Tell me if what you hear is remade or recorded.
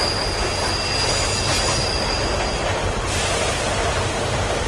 recorded